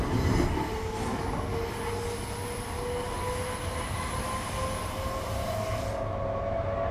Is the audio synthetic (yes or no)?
no